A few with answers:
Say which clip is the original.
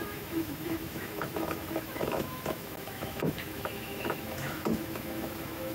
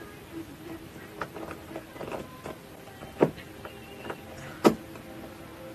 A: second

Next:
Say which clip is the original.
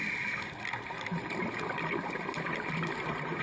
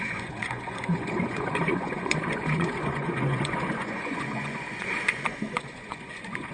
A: first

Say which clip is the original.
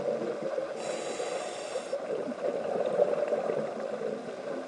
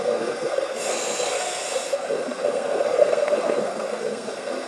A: first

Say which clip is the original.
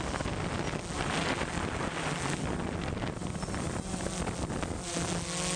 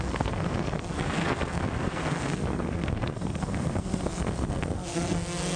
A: first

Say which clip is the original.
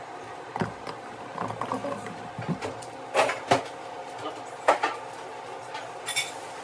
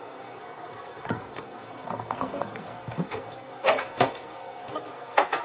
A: first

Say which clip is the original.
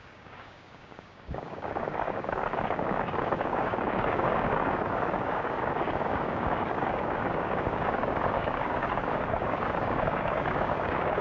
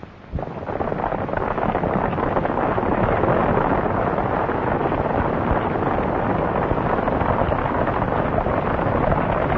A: second